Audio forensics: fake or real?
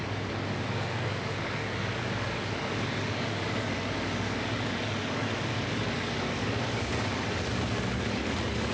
fake